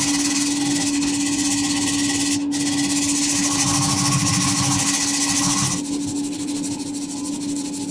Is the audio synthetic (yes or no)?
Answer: no